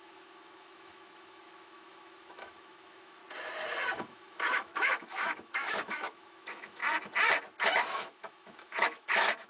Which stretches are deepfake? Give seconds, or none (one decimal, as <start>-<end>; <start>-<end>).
0.0-3.2; 3.9-6.8; 7.9-9.5